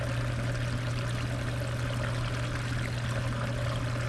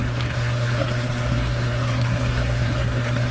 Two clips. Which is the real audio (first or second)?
first